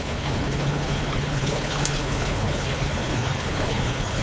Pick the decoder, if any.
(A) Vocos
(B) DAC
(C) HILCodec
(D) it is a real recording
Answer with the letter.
C